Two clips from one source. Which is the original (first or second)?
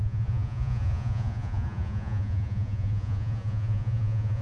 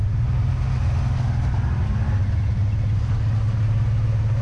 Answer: second